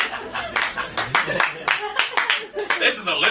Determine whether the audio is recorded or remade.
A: recorded